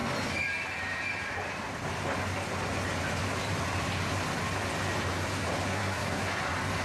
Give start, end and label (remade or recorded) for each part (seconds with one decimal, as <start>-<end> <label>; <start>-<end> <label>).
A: 0.0-5.7 recorded; 5.7-6.3 remade; 6.3-6.8 recorded